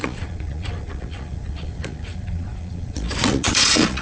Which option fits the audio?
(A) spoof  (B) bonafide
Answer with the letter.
A